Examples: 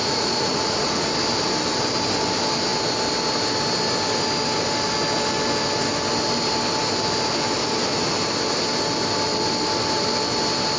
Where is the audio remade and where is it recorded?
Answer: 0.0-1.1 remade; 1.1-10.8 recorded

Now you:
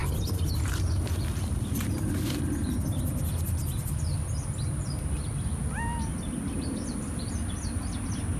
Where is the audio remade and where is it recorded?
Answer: 0.0-1.7 remade; 1.7-8.4 recorded

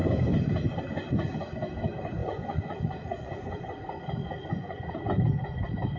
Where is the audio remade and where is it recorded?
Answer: 0.0-2.2 recorded; 2.2-3.6 remade; 3.6-4.2 recorded; 4.2-4.9 remade; 4.9-6.0 recorded